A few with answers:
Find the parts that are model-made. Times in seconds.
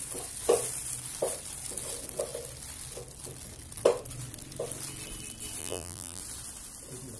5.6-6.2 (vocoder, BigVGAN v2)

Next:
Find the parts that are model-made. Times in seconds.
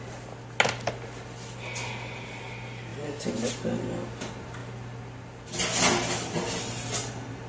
none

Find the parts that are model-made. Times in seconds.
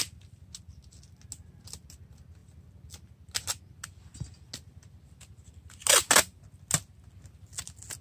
none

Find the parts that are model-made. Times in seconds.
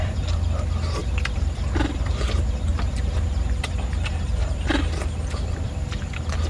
0.0-2.7 (vocoder, BigVGAN v2); 4.7-6.5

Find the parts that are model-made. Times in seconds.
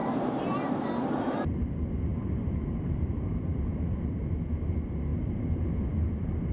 0.0-1.6 (vocoder, BigVGAN v2); 2.1-3.8; 5.1-5.7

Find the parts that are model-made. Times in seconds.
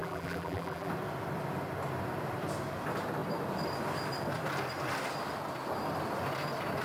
0.0-0.9 (vocoder, BigVGAN v2)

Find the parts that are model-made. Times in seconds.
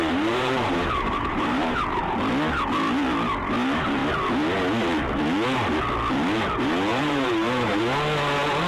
0.0-2.0 (vocoder, BigVGAN v2); 6.9-7.8